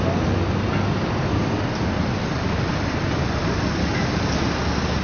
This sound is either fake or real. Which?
real